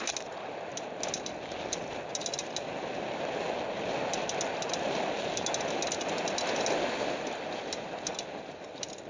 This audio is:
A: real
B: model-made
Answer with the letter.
A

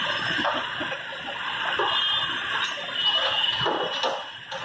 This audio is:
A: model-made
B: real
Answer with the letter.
B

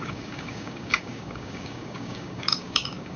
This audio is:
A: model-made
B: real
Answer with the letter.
A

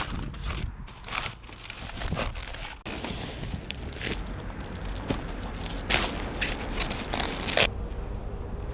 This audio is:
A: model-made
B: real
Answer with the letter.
B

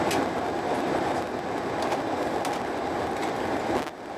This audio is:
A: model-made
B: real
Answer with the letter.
B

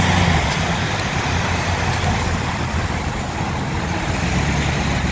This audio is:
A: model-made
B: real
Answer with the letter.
B